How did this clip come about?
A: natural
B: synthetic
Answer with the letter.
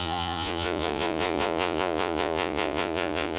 B